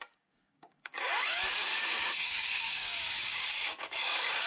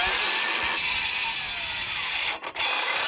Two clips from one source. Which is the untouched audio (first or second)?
second